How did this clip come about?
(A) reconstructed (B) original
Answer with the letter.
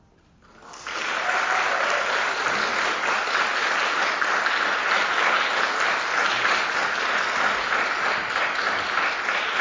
B